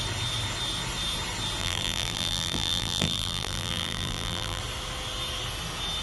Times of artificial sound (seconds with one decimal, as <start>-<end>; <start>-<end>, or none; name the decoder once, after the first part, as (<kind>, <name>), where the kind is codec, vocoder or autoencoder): 1.6-4.6 (vocoder, BigVGAN v2)